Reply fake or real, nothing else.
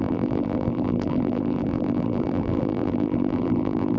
fake